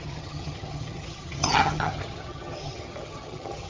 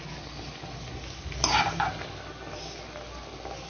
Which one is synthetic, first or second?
first